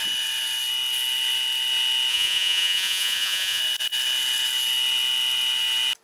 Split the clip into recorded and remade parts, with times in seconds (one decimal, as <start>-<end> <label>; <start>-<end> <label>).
0.0-2.1 recorded; 2.1-3.6 remade; 3.6-6.0 recorded